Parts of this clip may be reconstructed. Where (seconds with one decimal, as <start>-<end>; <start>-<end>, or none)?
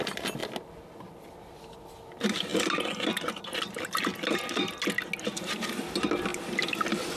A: none